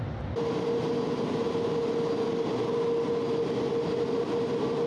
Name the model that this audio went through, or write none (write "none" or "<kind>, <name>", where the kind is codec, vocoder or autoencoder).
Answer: none